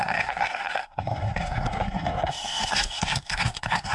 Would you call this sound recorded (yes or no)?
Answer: no